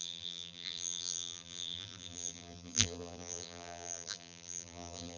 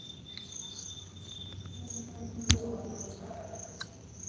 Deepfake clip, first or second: first